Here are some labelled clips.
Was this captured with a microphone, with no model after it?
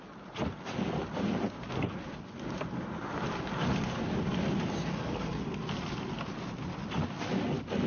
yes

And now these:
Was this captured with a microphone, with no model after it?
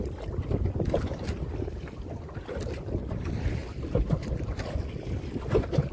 yes